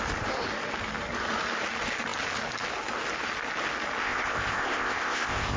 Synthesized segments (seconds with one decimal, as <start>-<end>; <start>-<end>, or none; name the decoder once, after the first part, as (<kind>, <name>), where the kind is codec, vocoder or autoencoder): 4.0-5.6 (codec, ZipCodec)